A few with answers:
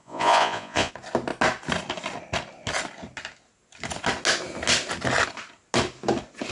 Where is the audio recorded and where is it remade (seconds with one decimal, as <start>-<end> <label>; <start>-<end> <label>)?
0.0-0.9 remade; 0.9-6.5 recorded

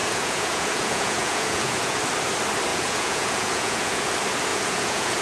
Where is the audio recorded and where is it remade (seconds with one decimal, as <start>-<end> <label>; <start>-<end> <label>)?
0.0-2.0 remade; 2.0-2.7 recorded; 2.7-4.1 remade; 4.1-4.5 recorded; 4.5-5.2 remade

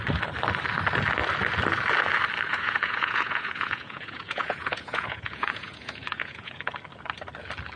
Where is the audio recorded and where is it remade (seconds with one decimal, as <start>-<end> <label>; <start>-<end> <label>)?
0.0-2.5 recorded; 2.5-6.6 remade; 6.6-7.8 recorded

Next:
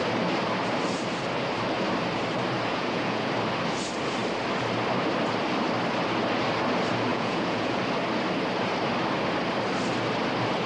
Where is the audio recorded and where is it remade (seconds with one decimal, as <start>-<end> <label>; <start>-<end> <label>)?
0.0-2.7 recorded; 2.7-3.3 remade; 3.3-7.1 recorded; 7.1-7.8 remade; 7.8-10.7 recorded